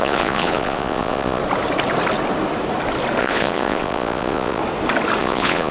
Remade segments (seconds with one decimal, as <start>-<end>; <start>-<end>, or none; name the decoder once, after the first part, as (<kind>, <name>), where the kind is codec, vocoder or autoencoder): 0.0-1.4 (vocoder, Vocos); 3.2-4.6; 5.2-5.7